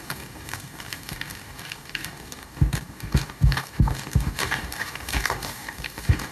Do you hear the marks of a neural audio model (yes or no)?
yes